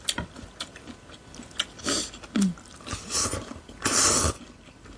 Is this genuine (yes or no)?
yes